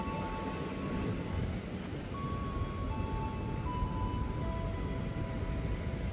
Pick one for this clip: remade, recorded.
recorded